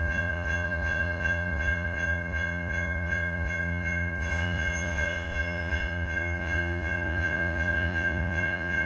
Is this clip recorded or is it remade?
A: remade